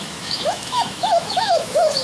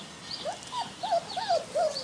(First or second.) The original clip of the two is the second